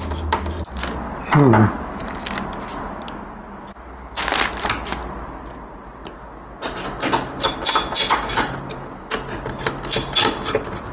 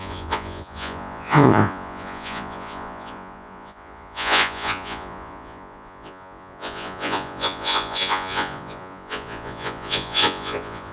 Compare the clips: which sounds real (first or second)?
first